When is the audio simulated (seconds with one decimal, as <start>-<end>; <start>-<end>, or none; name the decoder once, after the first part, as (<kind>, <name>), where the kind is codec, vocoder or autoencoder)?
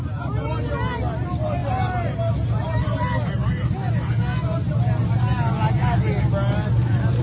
none